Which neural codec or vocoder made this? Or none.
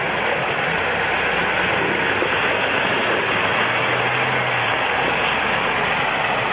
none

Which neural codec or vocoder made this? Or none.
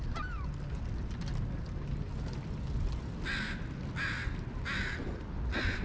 none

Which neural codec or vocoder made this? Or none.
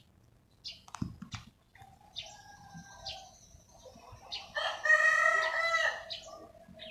none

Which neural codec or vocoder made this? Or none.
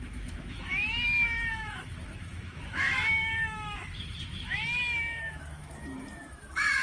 autoencoder, DAC-VAE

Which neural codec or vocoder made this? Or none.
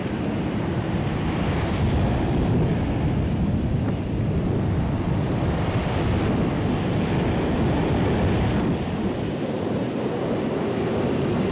none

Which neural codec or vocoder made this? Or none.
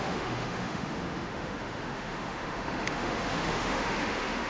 autoencoder, DAC-VAE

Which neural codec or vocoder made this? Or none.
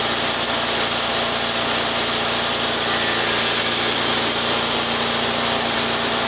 none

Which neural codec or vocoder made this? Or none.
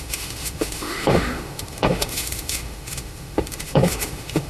autoencoder, DAC-VAE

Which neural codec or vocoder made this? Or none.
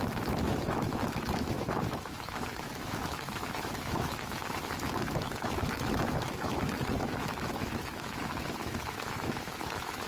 autoencoder, DAC-VAE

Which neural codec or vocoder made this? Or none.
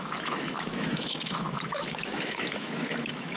autoencoder, DAC-VAE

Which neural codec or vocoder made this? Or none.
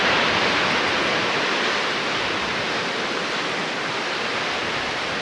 none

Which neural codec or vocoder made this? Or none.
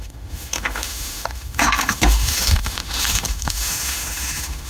autoencoder, DAC-VAE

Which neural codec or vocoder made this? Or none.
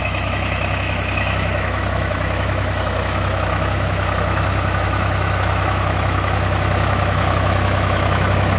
autoencoder, DAC-VAE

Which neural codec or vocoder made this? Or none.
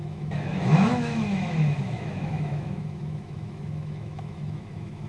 autoencoder, DAC-VAE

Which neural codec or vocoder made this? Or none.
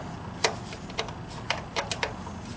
none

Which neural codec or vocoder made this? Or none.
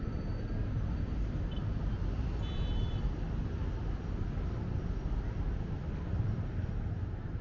none